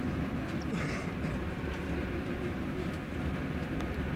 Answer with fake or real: real